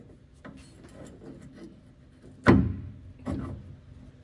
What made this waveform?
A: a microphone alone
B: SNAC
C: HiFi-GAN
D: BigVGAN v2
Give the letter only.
A